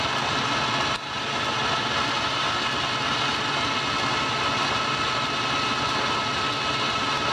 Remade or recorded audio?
recorded